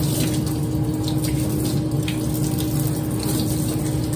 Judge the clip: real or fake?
real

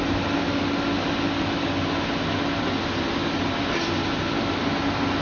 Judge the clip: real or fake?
real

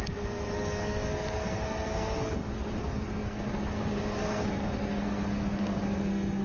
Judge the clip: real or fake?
fake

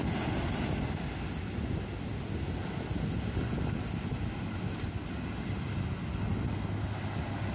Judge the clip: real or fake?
real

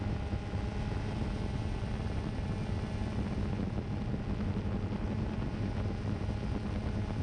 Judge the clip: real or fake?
real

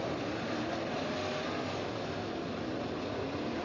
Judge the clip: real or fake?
real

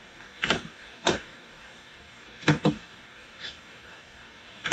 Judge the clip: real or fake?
fake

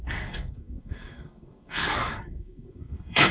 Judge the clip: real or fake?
fake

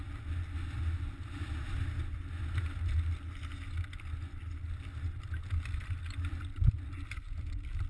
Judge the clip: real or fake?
real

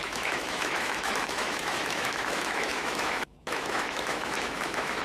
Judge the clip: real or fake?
fake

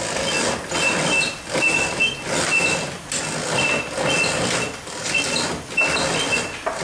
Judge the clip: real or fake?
real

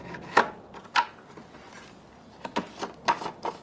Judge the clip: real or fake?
real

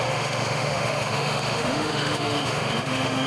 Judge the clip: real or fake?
fake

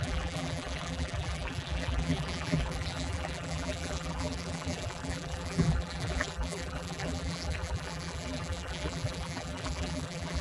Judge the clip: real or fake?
fake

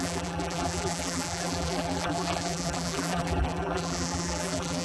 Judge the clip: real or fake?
fake